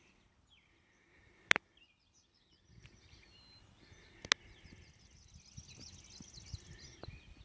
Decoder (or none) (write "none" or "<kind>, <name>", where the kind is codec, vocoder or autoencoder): none